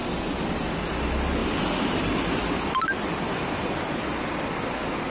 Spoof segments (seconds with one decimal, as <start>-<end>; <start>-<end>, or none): 0.0-0.7; 1.4-4.3